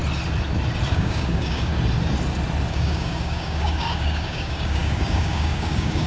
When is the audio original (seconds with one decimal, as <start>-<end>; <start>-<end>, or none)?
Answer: 0.0-0.9; 1.7-2.7